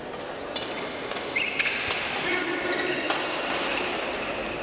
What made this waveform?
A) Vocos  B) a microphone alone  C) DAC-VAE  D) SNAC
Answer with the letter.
B